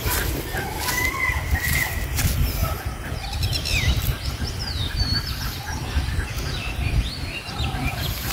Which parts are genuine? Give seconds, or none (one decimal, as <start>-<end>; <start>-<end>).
2.6-3.1